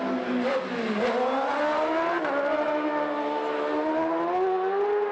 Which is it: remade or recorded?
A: recorded